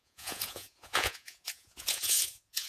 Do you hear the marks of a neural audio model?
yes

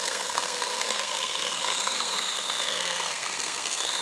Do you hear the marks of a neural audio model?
yes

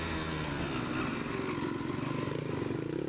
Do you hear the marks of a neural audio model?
no